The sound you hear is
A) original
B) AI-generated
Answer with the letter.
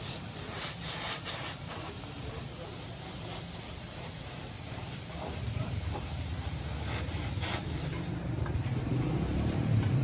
B